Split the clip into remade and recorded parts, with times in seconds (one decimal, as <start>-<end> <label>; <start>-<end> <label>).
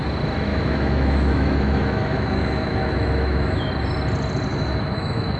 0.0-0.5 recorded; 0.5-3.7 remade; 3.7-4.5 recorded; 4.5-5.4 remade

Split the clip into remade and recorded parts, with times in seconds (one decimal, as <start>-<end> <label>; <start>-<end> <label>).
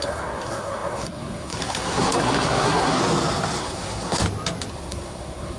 0.0-3.0 remade; 3.0-3.6 recorded; 3.6-4.2 remade; 4.2-4.7 recorded; 4.7-5.6 remade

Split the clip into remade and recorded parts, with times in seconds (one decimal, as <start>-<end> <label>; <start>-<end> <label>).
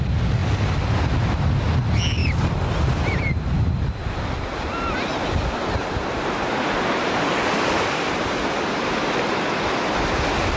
0.0-10.6 recorded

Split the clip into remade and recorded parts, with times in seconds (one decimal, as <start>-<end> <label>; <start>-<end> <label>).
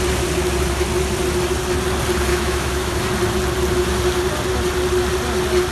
0.0-2.3 recorded; 2.3-3.0 remade; 3.0-5.7 recorded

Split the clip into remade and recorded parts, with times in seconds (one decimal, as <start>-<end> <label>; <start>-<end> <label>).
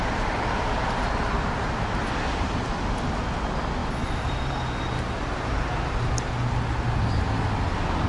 0.0-8.1 recorded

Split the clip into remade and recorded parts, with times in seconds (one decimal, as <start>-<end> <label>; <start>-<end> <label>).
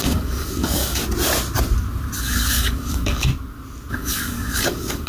0.0-1.0 remade; 1.0-2.2 recorded; 2.2-3.3 remade; 3.3-3.9 recorded; 3.9-5.1 remade